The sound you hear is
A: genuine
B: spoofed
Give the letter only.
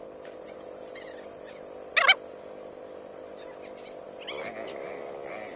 A